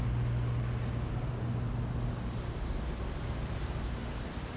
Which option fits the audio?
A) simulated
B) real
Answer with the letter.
B